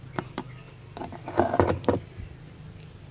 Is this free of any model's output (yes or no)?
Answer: yes